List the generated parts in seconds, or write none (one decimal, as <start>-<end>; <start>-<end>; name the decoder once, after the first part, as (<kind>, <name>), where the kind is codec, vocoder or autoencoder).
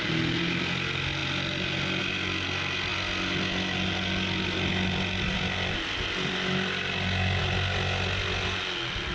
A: none